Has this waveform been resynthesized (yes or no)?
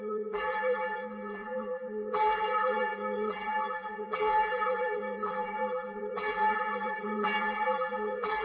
yes